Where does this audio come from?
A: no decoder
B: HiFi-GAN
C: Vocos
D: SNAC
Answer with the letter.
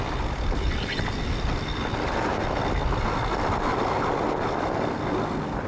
A